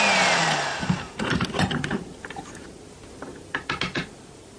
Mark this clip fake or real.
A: real